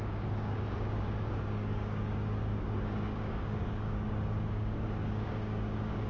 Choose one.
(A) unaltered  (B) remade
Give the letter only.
B